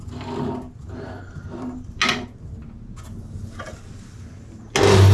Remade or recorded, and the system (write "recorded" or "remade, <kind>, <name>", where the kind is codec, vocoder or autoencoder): recorded